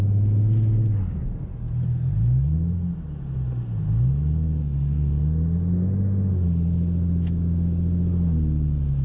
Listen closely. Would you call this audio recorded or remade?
recorded